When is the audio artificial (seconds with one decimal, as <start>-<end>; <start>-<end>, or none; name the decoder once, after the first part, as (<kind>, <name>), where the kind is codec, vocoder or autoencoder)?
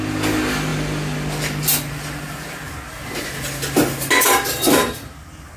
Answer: none